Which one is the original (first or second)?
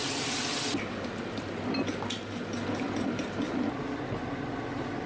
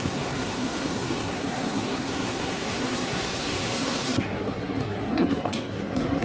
first